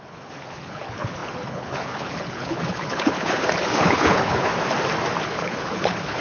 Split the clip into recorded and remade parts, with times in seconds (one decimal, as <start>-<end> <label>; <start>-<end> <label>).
0.0-4.5 remade; 4.5-5.2 recorded; 5.2-6.2 remade